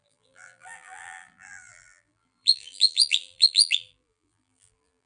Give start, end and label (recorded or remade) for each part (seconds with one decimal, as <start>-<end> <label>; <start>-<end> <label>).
0.0-5.1 remade